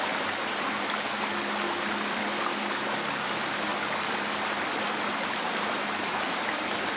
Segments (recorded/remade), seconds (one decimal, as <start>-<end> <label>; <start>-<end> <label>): 0.0-7.0 recorded

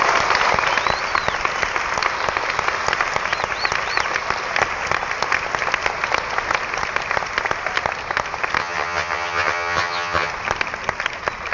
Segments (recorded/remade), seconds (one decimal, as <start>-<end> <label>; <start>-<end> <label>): 0.0-8.6 recorded; 8.6-10.3 remade; 10.3-11.5 recorded

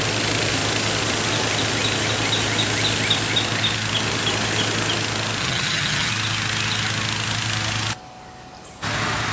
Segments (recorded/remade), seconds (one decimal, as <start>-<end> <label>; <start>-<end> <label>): 0.0-5.4 recorded; 5.4-6.1 remade; 6.1-9.3 recorded

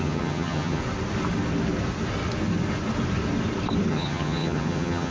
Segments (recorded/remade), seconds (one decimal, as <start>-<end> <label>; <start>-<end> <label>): 0.0-0.8 remade; 0.8-3.9 recorded; 3.9-5.1 remade

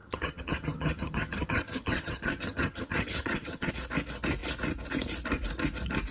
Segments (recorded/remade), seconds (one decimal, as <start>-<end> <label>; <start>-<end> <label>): 0.0-3.7 remade; 3.7-6.1 recorded